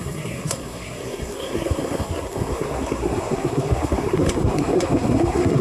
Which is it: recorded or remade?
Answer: remade